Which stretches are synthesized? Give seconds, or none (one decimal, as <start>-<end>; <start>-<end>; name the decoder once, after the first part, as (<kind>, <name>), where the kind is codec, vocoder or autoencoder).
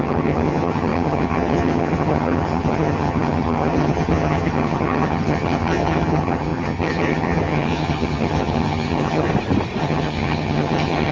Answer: 0.0-9.3 (vocoder, HiFi-GAN); 9.8-11.1